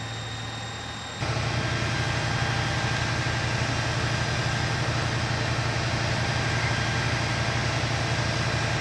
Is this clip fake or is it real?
real